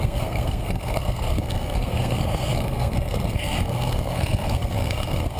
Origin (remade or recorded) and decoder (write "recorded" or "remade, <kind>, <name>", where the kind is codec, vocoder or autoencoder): remade, codec, SNAC